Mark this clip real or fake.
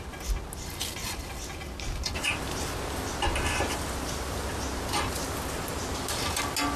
real